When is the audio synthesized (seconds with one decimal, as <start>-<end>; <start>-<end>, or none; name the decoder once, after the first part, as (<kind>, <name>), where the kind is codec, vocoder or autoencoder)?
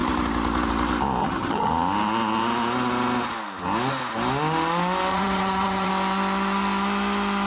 1.2-1.7 (vocoder, HiFi-GAN); 5.1-5.9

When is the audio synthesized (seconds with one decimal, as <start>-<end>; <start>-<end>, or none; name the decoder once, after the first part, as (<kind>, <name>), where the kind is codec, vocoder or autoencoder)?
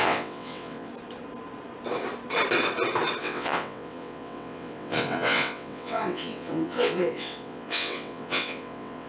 0.0-0.9 (vocoder, WaveNeXt); 3.2-9.1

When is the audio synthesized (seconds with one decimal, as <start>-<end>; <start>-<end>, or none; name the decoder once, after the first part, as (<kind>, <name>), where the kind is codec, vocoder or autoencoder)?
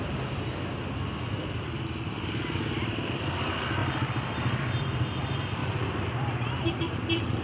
3.8-4.8 (vocoder, BigVGAN v2); 5.6-6.7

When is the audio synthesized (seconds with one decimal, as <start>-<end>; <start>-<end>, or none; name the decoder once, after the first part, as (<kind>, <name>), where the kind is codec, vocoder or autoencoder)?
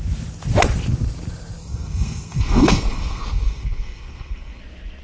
1.6-4.6 (codec, SNAC)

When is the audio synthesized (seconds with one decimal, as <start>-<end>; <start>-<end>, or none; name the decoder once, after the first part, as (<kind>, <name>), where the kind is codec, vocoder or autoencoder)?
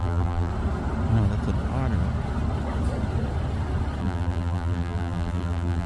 0.0-0.5 (vocoder, BigVGAN v2); 4.0-5.9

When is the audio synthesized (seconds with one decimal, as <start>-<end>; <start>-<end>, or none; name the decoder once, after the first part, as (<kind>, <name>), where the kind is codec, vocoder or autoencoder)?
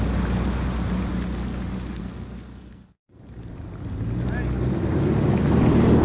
2.0-3.2 (codec, SNAC)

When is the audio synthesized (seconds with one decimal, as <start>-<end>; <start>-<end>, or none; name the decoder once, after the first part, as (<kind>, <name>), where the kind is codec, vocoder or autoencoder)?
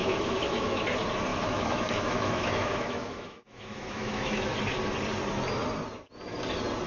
0.0-0.8 (autoencoder, DAC-VAE); 1.3-4.6